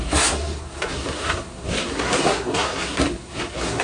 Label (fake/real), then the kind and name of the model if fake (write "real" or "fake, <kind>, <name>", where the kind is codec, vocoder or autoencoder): fake, codec, SNAC